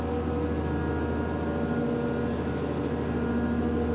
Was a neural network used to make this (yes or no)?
no